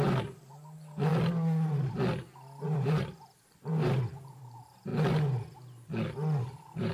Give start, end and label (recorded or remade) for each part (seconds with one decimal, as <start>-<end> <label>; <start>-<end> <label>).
0.0-1.1 remade; 1.1-2.6 recorded; 2.6-4.9 remade; 4.9-6.4 recorded; 6.4-6.9 remade